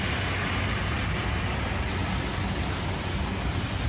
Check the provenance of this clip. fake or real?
real